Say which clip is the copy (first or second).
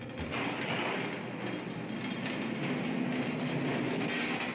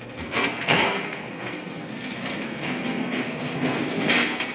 second